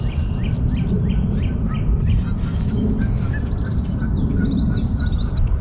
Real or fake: fake